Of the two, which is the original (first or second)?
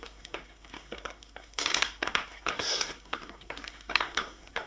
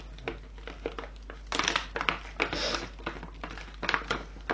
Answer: second